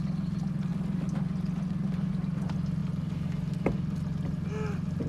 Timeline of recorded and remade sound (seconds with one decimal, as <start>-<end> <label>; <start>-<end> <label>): 0.0-5.1 recorded